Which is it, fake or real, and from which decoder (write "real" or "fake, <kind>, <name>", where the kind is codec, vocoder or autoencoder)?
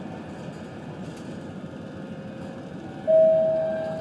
real